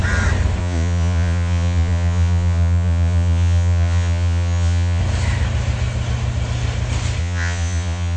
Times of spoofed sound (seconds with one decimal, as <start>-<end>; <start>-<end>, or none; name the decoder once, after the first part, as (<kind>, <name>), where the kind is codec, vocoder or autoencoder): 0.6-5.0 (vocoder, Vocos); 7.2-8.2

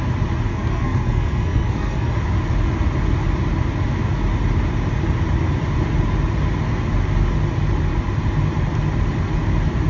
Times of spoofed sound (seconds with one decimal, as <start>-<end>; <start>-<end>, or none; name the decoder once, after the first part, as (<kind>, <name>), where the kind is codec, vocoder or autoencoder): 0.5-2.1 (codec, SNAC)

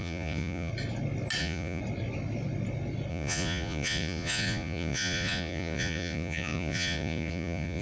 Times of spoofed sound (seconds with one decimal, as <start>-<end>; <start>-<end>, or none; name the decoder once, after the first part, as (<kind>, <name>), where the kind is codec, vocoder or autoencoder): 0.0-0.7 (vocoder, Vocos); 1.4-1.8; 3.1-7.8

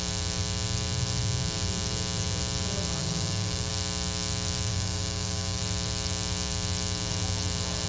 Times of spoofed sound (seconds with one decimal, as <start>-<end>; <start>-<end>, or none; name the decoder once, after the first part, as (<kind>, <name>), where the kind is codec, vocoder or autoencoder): 3.0-3.7 (codec, DAC); 4.7-5.6

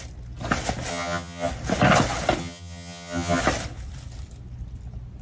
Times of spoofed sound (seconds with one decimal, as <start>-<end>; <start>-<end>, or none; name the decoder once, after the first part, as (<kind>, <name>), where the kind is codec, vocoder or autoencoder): 0.9-1.5 (vocoder, HiFi-GAN); 2.4-3.4

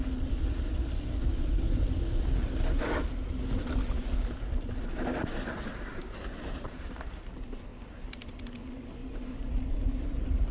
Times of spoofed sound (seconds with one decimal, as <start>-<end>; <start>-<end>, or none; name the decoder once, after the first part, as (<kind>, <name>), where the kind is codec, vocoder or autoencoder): 5.9-7.3 (vocoder, BigVGAN v2); 9.0-10.5

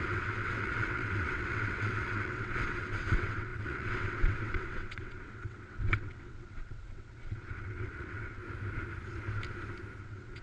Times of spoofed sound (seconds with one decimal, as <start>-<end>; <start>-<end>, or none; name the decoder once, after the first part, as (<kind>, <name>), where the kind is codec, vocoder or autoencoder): 0.0-8.4 (vocoder, WaveNeXt); 10.0-10.4

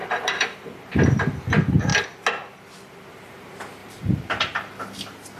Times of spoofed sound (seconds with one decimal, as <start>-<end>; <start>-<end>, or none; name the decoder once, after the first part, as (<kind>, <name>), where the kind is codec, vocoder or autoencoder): 0.0-0.9 (vocoder, BigVGAN v2); 3.8-4.8